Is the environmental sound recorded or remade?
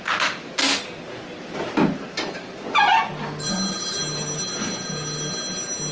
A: recorded